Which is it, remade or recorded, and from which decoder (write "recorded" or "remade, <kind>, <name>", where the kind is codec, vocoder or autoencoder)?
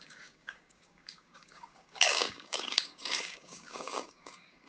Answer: remade, codec, DAC